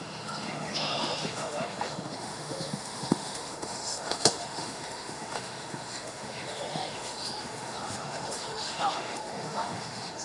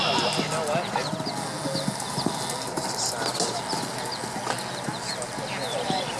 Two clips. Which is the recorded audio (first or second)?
second